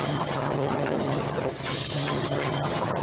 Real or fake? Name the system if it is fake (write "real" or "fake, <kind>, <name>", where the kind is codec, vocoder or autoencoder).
fake, vocoder, HiFi-GAN